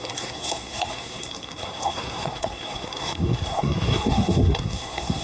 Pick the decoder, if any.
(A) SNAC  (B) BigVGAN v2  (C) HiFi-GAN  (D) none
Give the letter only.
A